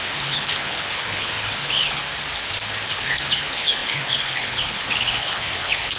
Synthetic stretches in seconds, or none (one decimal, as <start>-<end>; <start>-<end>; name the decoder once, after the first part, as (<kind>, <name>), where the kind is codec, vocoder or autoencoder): 0.0-2.0 (codec, HILCodec); 2.9-6.0